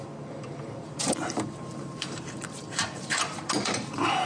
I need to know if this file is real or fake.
fake